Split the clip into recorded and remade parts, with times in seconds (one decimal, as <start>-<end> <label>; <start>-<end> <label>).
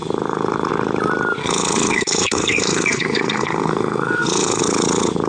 0.0-1.4 recorded; 1.4-4.6 remade; 4.6-5.3 recorded